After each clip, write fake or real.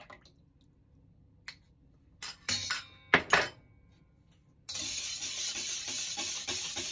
real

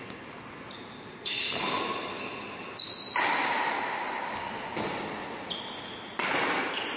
real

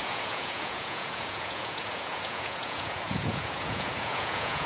fake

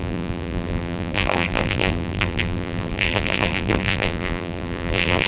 fake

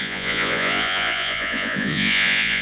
fake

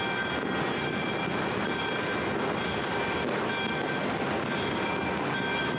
real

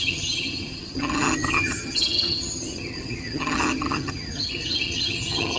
fake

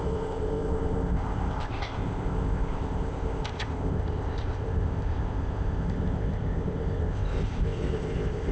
fake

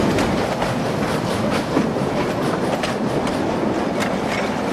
real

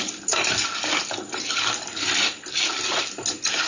real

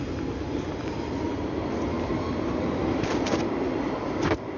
real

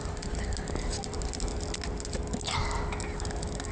real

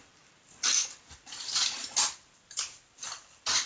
real